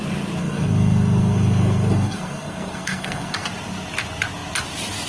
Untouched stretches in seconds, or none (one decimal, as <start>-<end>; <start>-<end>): 0.0-0.4; 3.5-5.1